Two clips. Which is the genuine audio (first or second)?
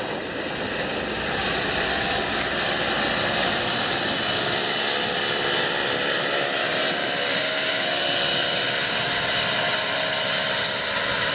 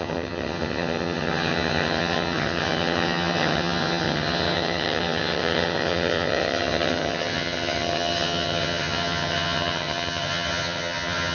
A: first